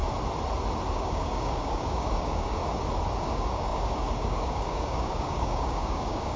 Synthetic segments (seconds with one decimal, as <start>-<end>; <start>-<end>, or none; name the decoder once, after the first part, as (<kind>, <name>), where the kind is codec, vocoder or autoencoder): 0.9-2.6 (codec, DAC); 3.2-6.4